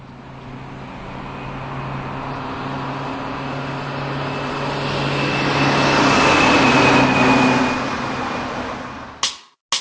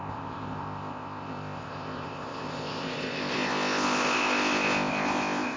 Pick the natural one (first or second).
first